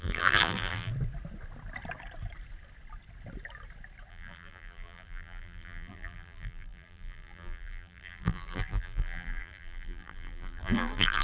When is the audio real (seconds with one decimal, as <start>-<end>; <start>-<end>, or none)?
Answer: 0.9-4.1